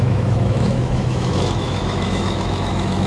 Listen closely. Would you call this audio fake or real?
fake